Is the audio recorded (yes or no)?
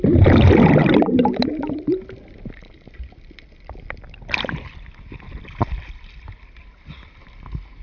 no